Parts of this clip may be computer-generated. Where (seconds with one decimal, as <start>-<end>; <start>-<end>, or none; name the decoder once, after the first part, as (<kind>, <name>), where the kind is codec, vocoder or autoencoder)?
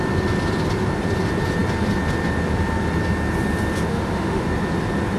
3.9-4.4 (autoencoder, DAC-VAE)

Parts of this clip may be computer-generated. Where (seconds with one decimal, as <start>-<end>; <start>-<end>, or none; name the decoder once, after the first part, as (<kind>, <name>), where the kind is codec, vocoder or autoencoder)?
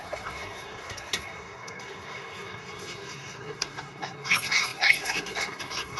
0.0-6.0 (codec, SNAC)